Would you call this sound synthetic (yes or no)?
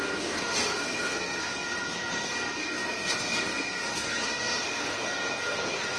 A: yes